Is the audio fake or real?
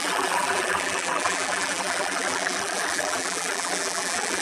fake